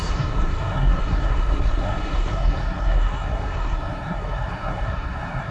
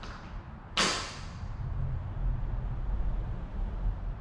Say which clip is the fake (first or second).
first